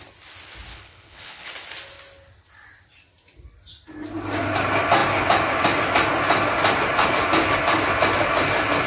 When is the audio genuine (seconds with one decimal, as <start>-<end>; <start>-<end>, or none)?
0.0-0.7; 1.5-8.9

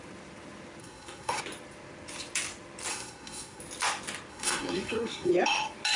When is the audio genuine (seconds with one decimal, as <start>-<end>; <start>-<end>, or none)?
0.0-0.8; 1.4-2.9; 3.6-4.3; 5.3-6.0

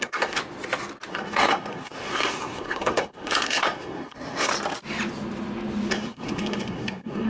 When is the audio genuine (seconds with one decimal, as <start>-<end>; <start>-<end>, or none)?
0.4-1.1; 4.5-5.9

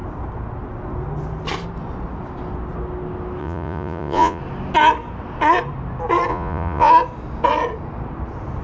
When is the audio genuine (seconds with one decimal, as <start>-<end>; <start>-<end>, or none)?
0.0-3.4; 4.4-6.3; 6.9-8.6

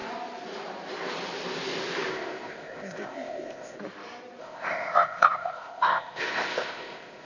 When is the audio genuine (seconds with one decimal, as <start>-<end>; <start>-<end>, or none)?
0.0-2.1; 3.8-4.4

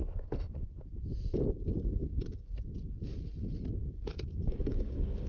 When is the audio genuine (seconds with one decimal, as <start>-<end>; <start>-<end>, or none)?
0.0-2.0; 2.5-3.8

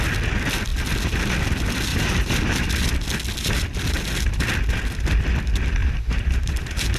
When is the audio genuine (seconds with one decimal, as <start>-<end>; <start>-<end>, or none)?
0.0-1.9; 2.7-5.8

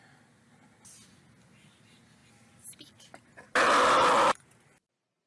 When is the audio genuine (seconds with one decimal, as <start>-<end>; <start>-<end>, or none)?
0.0-5.3